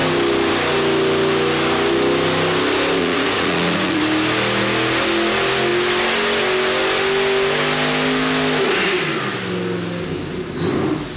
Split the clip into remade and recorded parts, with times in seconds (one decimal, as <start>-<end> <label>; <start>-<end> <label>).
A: 0.0-3.0 recorded; 3.0-4.0 remade; 4.0-11.2 recorded

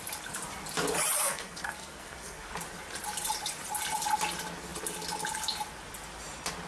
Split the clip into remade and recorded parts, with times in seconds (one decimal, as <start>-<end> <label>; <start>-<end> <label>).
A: 0.0-1.2 recorded; 1.2-2.5 remade; 2.5-6.7 recorded

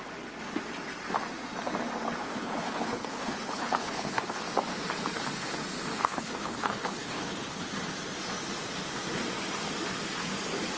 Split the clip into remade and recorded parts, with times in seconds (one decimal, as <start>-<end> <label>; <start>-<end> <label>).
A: 0.0-2.2 recorded; 2.2-4.4 remade; 4.4-6.0 recorded; 6.0-7.6 remade; 7.6-10.8 recorded

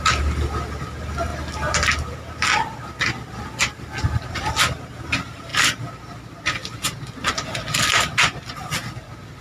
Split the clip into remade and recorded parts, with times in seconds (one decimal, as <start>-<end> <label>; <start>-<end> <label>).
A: 0.0-5.5 recorded; 5.5-6.0 remade; 6.0-9.4 recorded

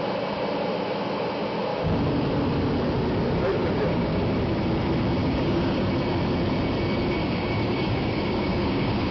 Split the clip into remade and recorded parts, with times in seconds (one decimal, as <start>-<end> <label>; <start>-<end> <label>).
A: 0.0-1.7 recorded; 1.7-2.3 remade; 2.3-3.6 recorded; 3.6-4.2 remade; 4.2-5.2 recorded; 5.2-5.9 remade; 5.9-7.2 recorded; 7.2-9.1 remade

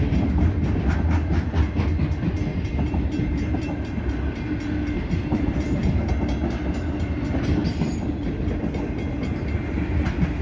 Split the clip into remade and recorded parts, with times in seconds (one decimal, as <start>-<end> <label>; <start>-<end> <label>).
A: 0.0-2.5 recorded; 2.5-6.1 remade; 6.1-10.4 recorded

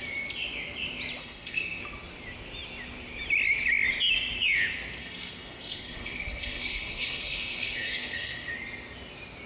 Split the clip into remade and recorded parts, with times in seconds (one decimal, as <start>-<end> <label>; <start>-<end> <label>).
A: 0.0-1.2 recorded; 1.2-1.8 remade; 1.8-5.0 recorded; 5.0-8.5 remade; 8.5-9.5 recorded